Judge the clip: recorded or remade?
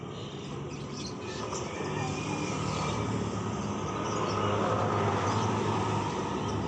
recorded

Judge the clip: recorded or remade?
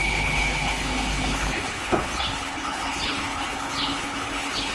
remade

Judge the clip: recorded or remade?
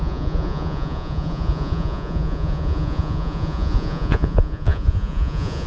remade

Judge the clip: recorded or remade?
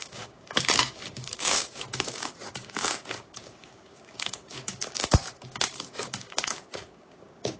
remade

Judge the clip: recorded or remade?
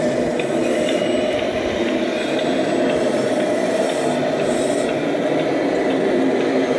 recorded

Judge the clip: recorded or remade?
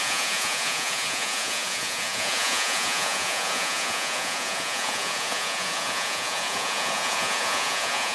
remade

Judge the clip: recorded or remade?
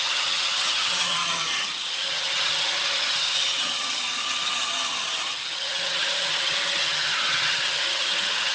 remade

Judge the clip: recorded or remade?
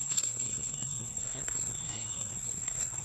remade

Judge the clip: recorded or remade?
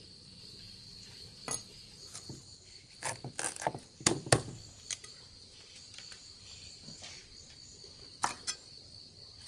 recorded